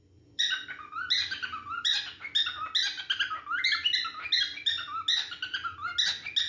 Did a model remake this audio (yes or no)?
no